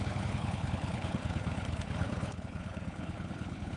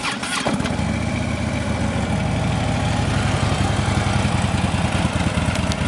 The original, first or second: second